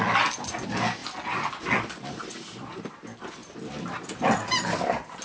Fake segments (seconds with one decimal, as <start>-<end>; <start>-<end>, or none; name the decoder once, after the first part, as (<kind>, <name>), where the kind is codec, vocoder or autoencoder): none